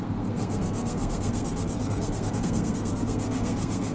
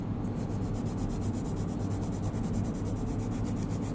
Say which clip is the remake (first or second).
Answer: first